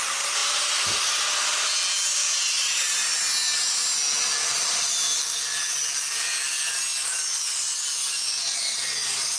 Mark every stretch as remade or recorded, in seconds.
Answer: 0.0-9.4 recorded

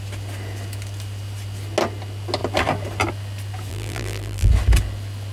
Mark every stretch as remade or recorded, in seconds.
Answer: 0.0-3.7 recorded; 3.7-4.5 remade; 4.5-5.3 recorded